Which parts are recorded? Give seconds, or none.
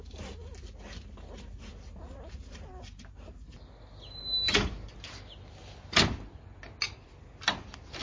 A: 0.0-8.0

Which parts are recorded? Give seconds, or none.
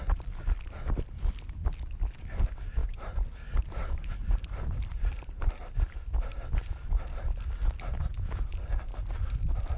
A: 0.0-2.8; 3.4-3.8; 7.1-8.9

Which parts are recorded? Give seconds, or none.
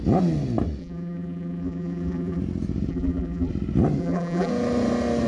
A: 0.0-0.8; 2.4-2.9; 3.5-4.0; 4.5-5.3